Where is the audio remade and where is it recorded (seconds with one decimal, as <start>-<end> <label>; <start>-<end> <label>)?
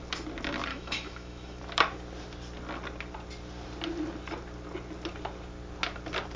0.0-0.7 recorded; 0.7-1.6 remade; 1.6-6.4 recorded